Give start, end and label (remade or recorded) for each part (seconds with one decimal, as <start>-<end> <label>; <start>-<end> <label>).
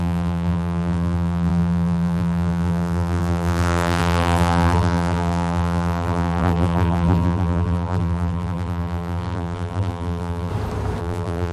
0.0-10.5 remade; 10.5-11.0 recorded; 11.0-11.5 remade